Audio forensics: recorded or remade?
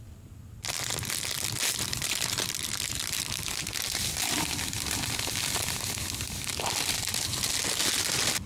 remade